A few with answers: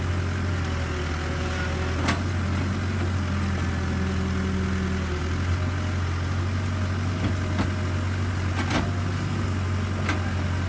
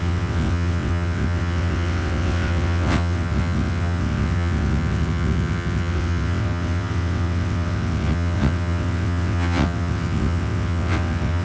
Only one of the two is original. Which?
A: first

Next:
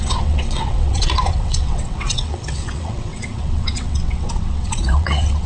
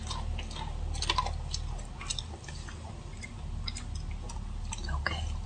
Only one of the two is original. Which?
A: second